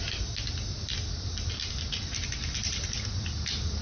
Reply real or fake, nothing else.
real